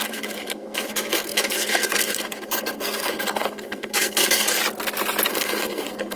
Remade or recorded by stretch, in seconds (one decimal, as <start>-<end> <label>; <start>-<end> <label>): 0.0-4.6 remade; 4.6-5.3 recorded; 5.3-6.2 remade